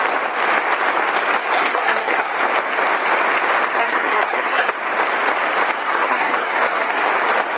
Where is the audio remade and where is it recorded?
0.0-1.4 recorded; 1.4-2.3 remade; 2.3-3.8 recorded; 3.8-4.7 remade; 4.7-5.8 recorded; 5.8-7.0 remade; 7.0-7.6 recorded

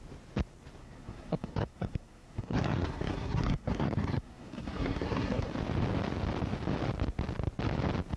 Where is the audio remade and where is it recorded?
0.0-0.8 recorded; 0.8-5.5 remade; 5.5-8.2 recorded

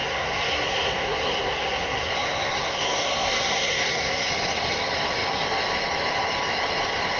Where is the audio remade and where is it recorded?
0.0-4.3 remade; 4.3-7.2 recorded

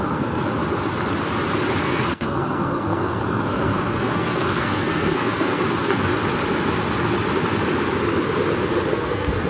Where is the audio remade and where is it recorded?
0.0-0.5 remade; 0.5-1.8 recorded; 1.8-6.1 remade; 6.1-8.9 recorded; 8.9-9.5 remade